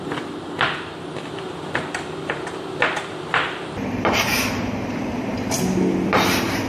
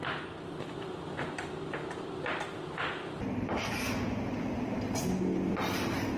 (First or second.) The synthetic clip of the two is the first